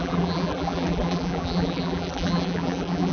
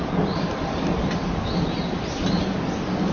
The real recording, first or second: second